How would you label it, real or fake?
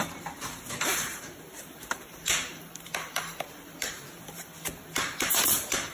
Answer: fake